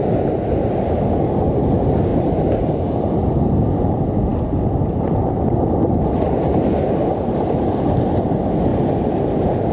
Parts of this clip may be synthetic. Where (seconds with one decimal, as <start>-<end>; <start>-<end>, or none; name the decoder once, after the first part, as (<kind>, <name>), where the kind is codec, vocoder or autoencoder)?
none